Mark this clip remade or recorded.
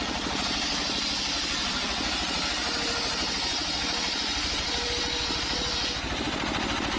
recorded